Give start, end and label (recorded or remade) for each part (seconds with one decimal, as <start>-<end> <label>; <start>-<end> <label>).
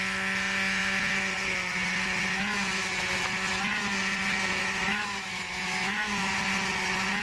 0.0-4.6 recorded; 4.6-6.2 remade; 6.2-7.2 recorded